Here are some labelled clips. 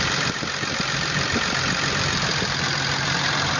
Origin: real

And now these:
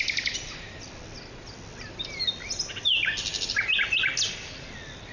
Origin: real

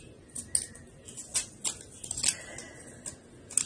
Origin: real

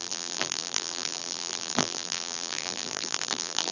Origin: fake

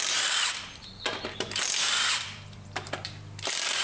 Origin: fake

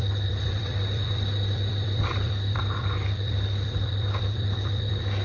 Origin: fake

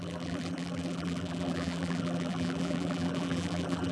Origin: fake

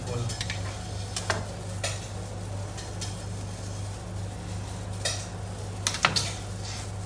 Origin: real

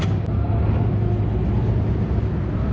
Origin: real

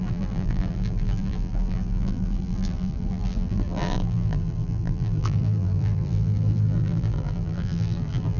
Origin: fake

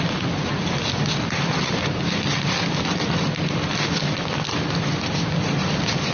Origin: real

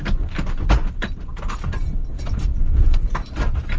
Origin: real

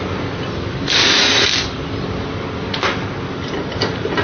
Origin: fake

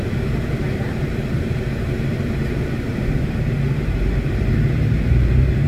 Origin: fake